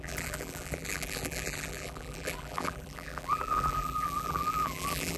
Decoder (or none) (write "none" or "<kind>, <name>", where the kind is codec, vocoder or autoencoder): vocoder, BigVGAN v2